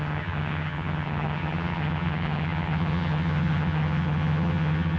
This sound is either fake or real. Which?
fake